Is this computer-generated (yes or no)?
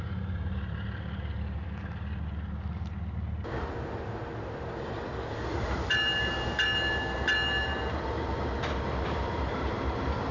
no